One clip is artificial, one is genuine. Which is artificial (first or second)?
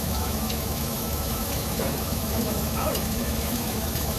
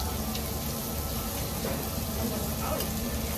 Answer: first